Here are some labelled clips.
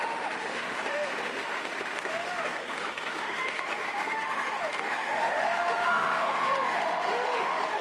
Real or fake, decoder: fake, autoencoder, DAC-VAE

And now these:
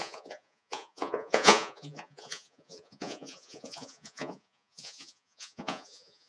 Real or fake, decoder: fake, vocoder, Vocos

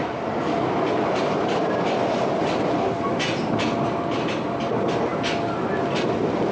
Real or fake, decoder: real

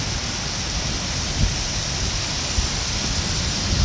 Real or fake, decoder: real